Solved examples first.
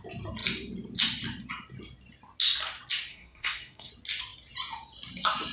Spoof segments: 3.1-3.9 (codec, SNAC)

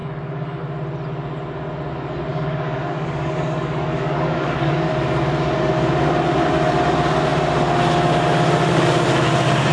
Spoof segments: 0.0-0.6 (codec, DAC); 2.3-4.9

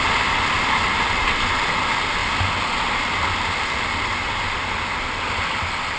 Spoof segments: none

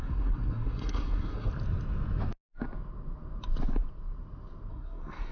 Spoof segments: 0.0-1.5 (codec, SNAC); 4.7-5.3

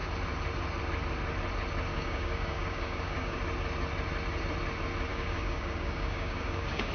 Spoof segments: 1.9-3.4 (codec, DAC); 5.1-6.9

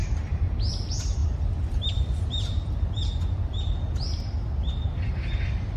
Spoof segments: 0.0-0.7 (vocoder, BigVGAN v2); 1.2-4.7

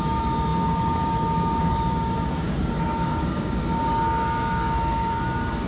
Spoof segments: 0.0-5.7 (codec, DAC)